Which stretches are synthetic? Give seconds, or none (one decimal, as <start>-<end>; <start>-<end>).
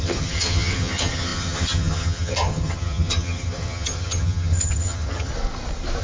0.0-5.3